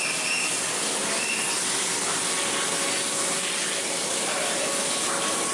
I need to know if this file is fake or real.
real